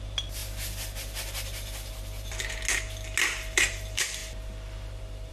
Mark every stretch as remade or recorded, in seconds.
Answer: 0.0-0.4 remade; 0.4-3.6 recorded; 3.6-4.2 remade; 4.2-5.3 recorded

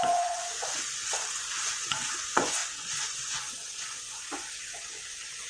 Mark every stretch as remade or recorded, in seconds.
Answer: 0.0-0.5 remade; 0.5-1.3 recorded; 1.3-5.5 remade

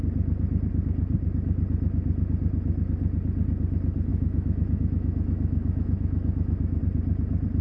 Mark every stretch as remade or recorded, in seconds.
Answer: 0.0-4.1 recorded; 4.1-6.8 remade; 6.8-7.6 recorded

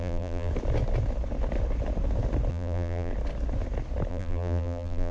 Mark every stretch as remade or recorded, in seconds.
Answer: 0.0-0.5 remade; 0.5-2.5 recorded; 2.5-3.1 remade; 3.1-4.1 recorded; 4.1-5.1 remade

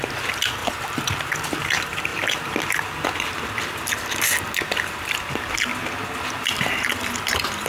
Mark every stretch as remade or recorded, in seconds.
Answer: 0.0-0.6 recorded; 0.6-1.4 remade; 1.4-7.7 recorded

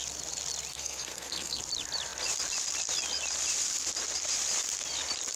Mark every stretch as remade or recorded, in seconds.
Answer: 0.0-0.7 recorded; 0.7-1.6 remade; 1.6-5.4 recorded